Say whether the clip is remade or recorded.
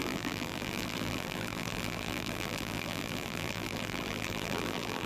remade